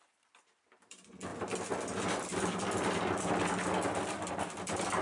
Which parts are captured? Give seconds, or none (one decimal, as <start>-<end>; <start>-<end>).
0.0-5.0